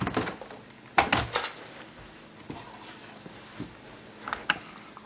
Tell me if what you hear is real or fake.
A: real